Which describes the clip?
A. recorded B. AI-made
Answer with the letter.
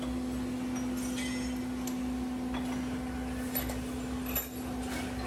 A